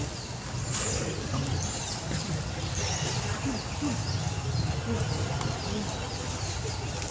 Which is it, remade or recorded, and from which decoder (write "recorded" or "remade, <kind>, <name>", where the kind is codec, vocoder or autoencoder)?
recorded